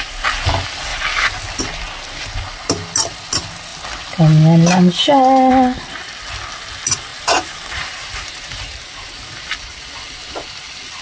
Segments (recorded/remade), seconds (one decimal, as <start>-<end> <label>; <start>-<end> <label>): 0.0-7.1 recorded; 7.1-9.4 remade; 9.4-11.0 recorded